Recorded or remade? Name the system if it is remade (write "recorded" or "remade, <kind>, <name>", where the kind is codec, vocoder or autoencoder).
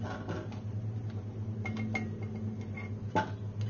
recorded